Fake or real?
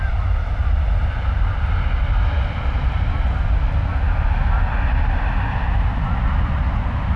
real